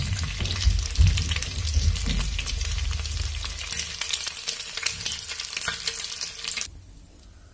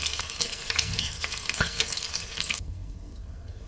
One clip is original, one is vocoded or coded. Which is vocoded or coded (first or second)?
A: second